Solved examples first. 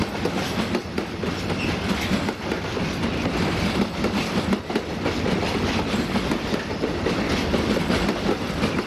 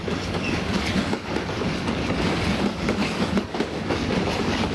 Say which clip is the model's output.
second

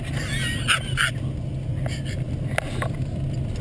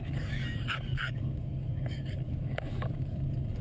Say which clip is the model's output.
second